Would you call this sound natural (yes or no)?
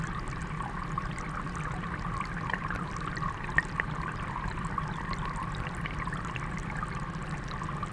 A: yes